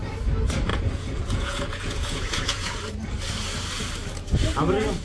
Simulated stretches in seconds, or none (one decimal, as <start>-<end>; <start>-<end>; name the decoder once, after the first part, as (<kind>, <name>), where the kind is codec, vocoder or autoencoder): 0.7-2.8 (vocoder, Vocos)